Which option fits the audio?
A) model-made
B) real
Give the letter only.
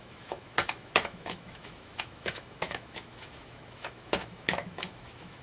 A